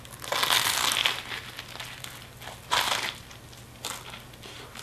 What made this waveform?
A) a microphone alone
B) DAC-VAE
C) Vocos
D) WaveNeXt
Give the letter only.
A